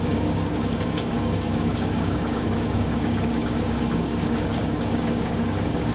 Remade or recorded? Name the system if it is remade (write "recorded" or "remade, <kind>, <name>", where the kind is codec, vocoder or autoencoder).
remade, codec, DAC